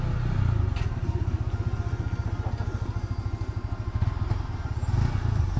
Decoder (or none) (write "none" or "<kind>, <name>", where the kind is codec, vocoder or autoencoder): none